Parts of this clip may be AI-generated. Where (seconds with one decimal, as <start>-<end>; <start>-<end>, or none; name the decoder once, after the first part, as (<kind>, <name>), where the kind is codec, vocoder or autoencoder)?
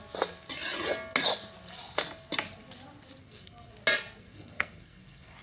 3.2-3.7 (codec, SNAC); 4.2-5.4